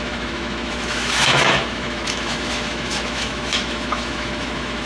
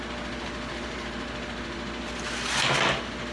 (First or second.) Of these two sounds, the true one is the second